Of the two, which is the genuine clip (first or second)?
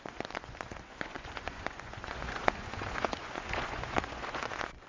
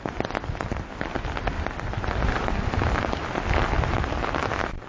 second